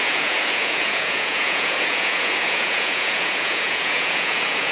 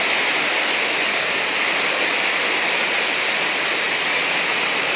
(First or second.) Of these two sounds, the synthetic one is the first